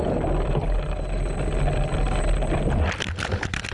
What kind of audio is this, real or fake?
real